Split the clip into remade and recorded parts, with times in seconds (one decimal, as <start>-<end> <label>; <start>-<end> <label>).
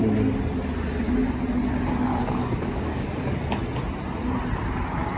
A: 0.0-2.2 recorded; 2.2-3.4 remade; 3.4-5.2 recorded